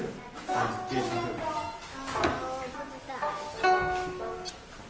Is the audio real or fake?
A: real